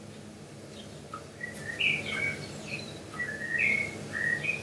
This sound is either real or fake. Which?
real